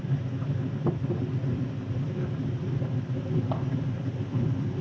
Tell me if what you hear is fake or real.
fake